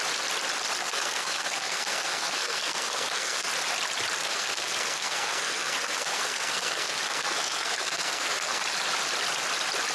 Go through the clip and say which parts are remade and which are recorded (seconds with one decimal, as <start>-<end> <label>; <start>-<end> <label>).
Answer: 0.0-0.8 recorded; 0.8-3.5 remade; 3.5-4.2 recorded; 4.2-8.6 remade; 8.6-9.9 recorded

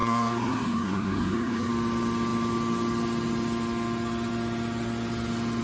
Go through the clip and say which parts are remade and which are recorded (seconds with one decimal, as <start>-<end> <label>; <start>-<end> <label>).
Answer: 0.0-1.7 remade; 1.7-5.6 recorded

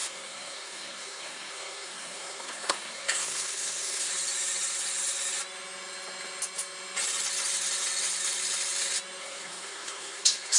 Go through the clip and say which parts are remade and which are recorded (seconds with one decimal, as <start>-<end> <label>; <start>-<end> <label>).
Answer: 0.0-4.1 remade; 4.1-9.2 recorded; 9.2-10.6 remade

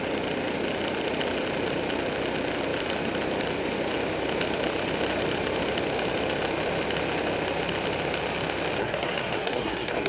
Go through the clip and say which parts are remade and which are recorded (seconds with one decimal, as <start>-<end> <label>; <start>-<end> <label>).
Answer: 0.0-8.8 recorded; 8.8-10.1 remade

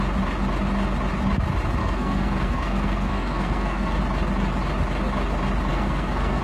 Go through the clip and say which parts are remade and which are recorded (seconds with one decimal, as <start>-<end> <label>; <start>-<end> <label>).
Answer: 0.0-1.8 recorded; 1.8-4.0 remade; 4.0-5.7 recorded; 5.7-6.4 remade